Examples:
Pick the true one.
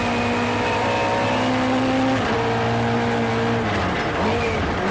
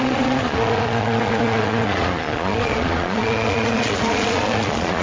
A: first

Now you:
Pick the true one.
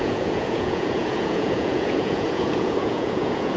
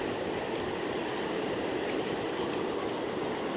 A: second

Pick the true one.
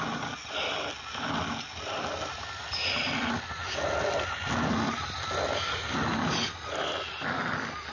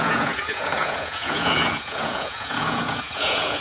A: first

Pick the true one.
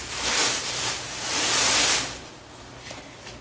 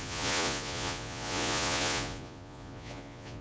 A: first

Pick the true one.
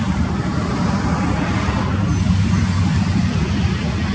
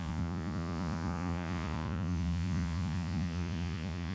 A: first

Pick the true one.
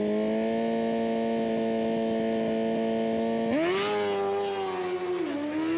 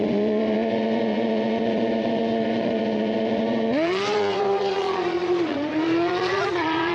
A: first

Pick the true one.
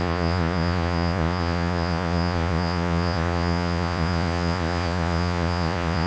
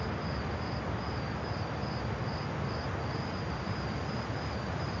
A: second